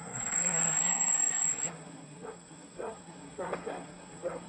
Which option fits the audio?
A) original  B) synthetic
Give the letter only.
B